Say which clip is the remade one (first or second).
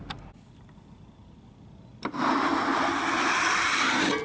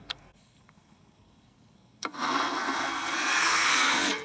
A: second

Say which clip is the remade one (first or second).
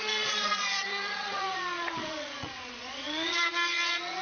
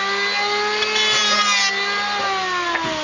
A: first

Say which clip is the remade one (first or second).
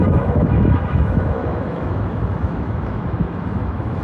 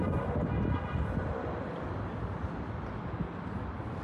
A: first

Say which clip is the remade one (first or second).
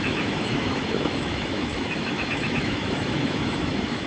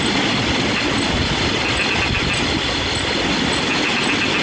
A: first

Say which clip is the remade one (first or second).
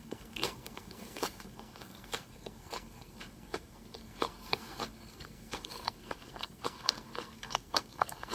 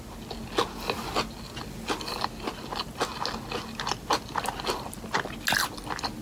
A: first